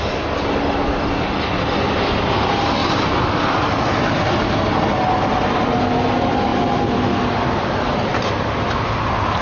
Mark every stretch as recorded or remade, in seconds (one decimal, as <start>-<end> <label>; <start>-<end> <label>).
0.0-9.4 recorded